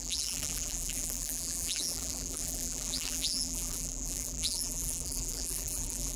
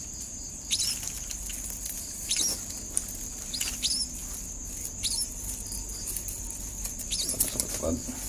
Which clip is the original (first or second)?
second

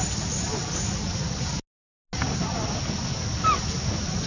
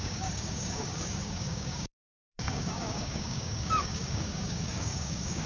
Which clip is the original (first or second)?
first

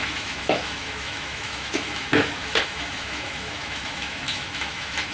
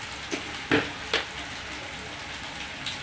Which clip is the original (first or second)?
second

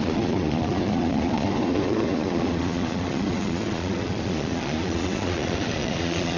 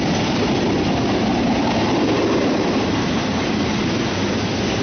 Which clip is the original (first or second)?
second